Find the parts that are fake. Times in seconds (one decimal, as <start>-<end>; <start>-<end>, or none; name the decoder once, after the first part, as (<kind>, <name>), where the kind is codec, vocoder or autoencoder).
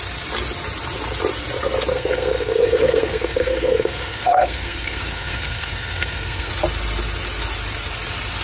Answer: 1.9-6.5 (codec, SNAC)